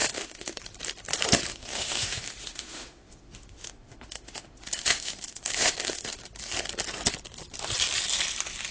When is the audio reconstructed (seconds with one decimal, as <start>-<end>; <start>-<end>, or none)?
0.0-0.6; 1.5-6.2